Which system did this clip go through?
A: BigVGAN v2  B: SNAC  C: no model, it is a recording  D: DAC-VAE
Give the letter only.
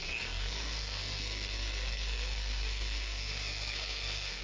B